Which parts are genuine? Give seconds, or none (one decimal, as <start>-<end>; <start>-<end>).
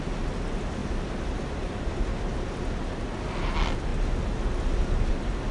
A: 0.0-5.5